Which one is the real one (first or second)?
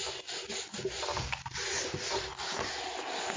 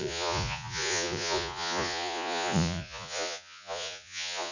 first